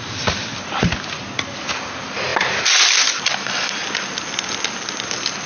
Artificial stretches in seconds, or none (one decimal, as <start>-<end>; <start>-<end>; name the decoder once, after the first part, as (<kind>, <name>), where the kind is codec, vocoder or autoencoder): 2.3-4.5 (vocoder, BigVGAN v2)